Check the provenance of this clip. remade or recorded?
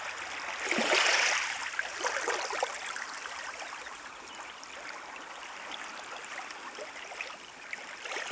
recorded